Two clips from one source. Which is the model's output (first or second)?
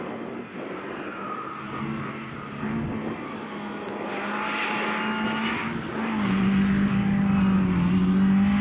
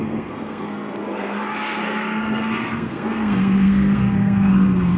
second